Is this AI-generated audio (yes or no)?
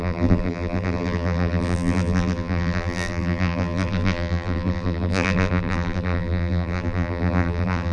yes